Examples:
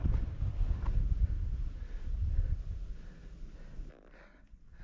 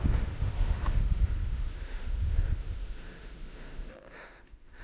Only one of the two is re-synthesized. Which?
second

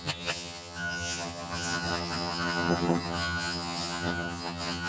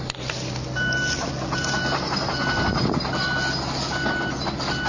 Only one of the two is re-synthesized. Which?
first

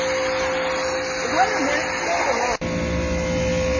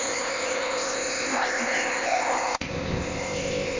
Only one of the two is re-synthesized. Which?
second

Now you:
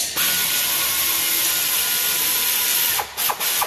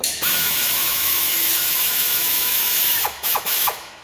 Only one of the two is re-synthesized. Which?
second